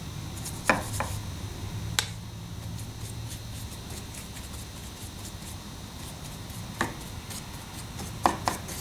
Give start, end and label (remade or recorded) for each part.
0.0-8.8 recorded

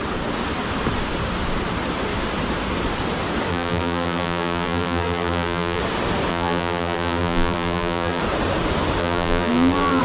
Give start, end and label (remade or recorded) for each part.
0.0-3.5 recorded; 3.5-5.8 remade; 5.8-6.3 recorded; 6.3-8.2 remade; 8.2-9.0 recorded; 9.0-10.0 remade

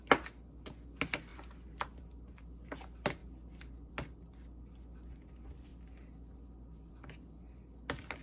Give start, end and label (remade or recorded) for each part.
0.0-8.2 recorded

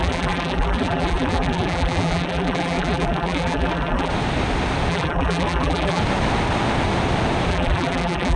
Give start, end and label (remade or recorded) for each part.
0.0-4.1 remade; 4.1-4.9 recorded; 4.9-6.0 remade; 6.0-7.5 recorded; 7.5-8.4 remade

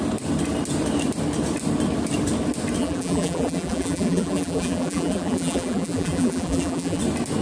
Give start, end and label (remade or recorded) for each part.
0.0-2.8 recorded; 2.8-7.0 remade; 7.0-7.4 recorded

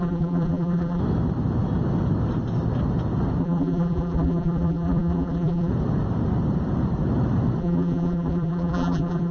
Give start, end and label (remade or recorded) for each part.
0.0-1.0 remade; 1.0-3.4 recorded; 3.4-5.7 remade; 5.7-7.6 recorded; 7.6-9.3 remade

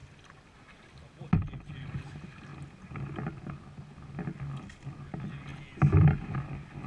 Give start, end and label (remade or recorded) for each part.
0.0-6.9 recorded